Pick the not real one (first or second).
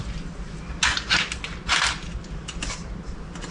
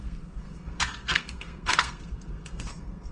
second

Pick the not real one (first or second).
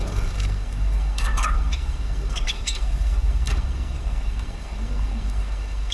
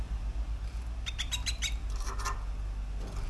first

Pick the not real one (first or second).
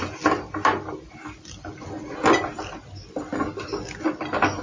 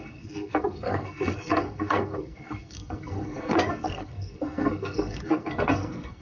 second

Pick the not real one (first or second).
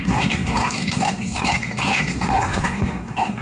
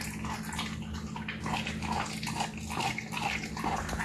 first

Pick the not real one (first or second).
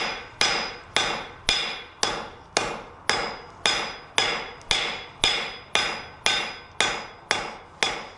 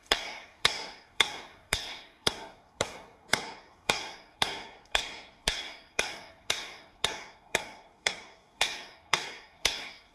second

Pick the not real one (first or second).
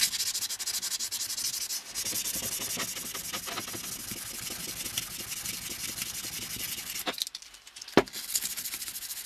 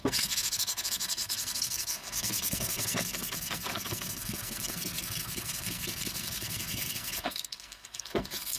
second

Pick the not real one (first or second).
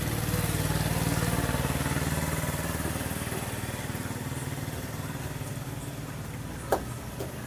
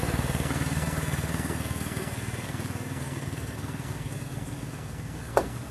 second